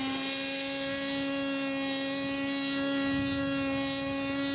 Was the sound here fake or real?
real